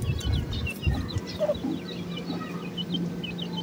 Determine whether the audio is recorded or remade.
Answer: recorded